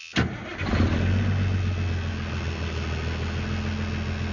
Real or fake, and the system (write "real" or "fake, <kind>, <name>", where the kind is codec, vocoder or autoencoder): real